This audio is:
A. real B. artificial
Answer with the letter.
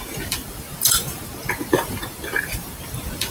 B